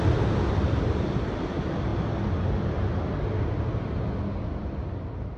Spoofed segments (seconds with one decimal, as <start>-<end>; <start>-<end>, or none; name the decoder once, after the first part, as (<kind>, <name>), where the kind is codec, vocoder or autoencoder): 4.6-5.4 (vocoder, BigVGAN v2)